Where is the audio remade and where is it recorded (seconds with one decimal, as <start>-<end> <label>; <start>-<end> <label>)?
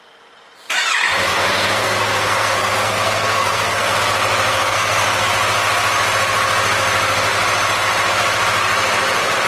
0.0-1.3 recorded; 1.3-4.0 remade; 4.0-4.5 recorded; 4.5-5.3 remade; 5.3-9.5 recorded